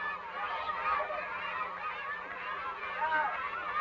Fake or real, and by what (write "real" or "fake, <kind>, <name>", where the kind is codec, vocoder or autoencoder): real